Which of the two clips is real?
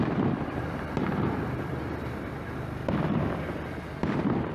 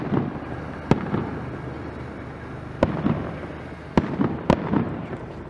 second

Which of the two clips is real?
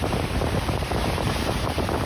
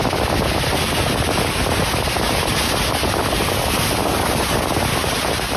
second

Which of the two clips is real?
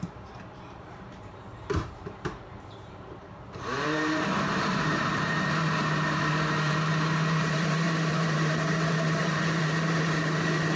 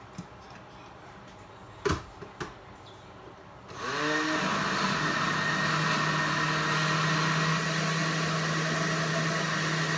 second